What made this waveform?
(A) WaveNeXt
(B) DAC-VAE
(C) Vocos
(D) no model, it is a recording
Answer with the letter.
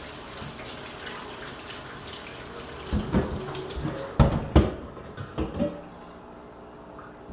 D